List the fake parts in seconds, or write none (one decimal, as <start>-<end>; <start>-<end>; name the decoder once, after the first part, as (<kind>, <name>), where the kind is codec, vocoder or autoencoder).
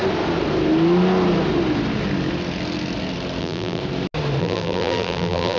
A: 3.4-3.8 (vocoder, BigVGAN v2); 4.4-5.6